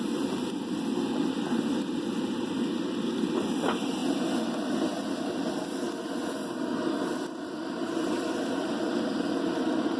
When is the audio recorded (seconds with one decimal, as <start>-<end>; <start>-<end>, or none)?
0.0-10.0